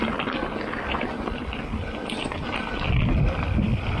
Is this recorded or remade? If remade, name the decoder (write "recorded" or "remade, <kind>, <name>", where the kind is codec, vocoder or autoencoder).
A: recorded